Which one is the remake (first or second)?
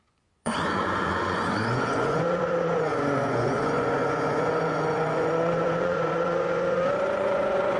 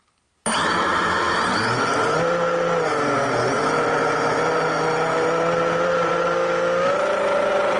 first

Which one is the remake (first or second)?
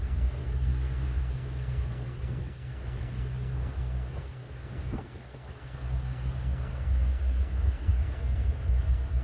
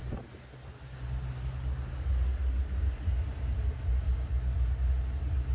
first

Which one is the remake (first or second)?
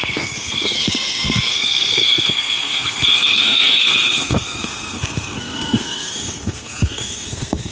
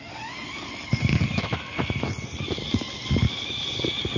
first